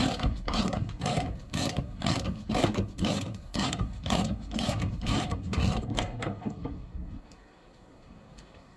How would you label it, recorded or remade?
remade